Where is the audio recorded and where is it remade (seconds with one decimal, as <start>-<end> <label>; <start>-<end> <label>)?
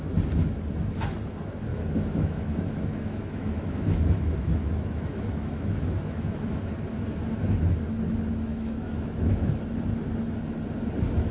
0.0-1.7 recorded; 1.7-6.7 remade; 6.7-8.5 recorded; 8.5-9.5 remade; 9.5-11.3 recorded